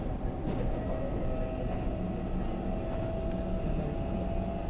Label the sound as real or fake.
real